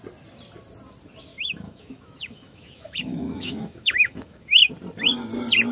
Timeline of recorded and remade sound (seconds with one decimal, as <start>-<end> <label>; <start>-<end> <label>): 0.0-1.3 recorded; 1.3-4.7 remade; 4.7-5.7 recorded